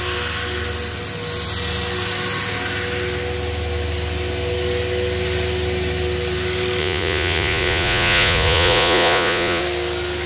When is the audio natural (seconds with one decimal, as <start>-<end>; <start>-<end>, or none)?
0.0-6.8; 9.6-10.3